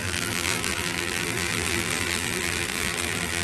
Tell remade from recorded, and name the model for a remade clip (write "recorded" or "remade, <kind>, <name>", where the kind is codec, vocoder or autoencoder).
remade, vocoder, BigVGAN v2